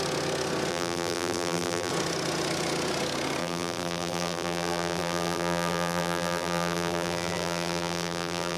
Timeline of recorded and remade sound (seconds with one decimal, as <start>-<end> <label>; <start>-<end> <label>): 0.0-0.7 recorded; 0.7-1.9 remade; 1.9-3.4 recorded; 3.4-8.6 remade